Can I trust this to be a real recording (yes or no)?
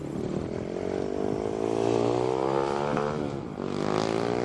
yes